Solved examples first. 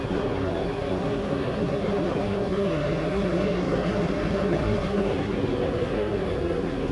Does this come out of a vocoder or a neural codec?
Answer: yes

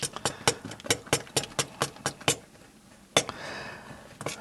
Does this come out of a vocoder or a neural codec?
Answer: no